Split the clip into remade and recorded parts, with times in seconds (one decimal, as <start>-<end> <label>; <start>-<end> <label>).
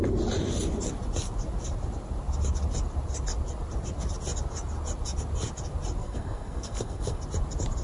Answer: 0.0-6.0 recorded; 6.0-7.2 remade; 7.2-7.8 recorded